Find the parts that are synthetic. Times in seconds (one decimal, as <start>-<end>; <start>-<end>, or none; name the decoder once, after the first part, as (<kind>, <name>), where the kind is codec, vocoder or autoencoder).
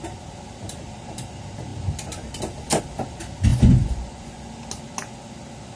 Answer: 3.5-4.4 (vocoder, Vocos)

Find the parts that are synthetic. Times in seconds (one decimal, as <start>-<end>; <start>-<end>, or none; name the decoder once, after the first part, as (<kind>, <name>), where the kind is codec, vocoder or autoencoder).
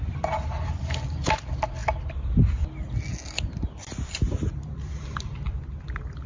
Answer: none